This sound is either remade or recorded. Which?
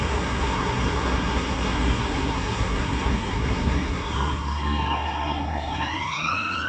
remade